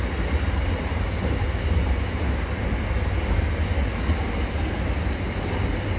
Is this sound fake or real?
real